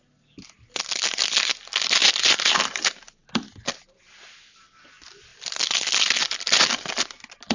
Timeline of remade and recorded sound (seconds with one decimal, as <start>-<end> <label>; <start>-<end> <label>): 0.0-7.5 recorded